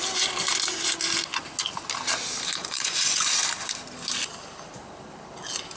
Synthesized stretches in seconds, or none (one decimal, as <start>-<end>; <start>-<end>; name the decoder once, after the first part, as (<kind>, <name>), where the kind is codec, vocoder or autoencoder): 2.6-3.3 (vocoder, Vocos)